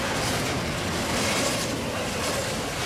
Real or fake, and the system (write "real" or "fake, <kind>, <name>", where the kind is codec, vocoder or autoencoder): real